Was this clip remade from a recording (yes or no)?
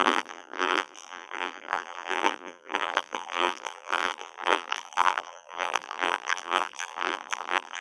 yes